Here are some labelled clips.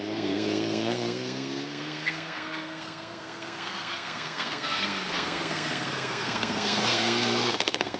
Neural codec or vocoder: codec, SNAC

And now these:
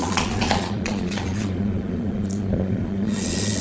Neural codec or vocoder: vocoder, Vocos